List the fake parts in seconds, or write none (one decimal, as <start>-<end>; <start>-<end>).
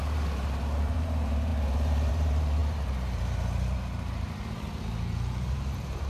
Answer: 0.0-6.1